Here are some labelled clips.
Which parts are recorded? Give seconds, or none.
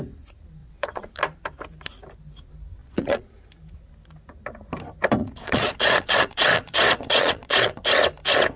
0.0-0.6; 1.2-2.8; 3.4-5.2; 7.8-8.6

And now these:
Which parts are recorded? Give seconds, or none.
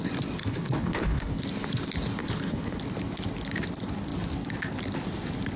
0.0-0.4; 1.4-2.2; 2.8-5.6